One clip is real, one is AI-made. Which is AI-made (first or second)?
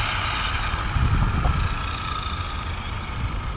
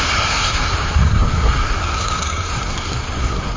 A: second